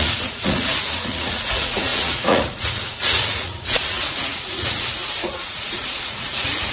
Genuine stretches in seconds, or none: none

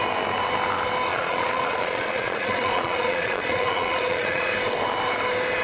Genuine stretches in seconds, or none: 0.0-1.1; 4.5-5.6

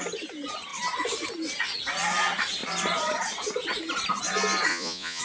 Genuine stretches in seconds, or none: 0.0-4.7

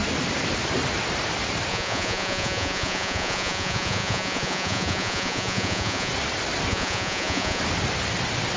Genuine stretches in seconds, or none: 0.0-1.7; 6.1-6.7; 7.6-8.6

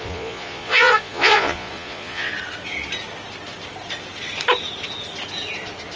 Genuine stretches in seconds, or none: 2.3-6.0

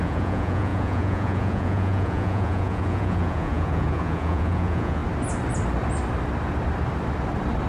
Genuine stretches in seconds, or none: 5.0-7.7

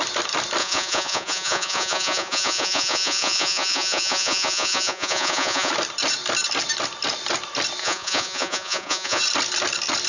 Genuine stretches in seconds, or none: 0.0-0.6; 5.7-7.8; 9.2-10.1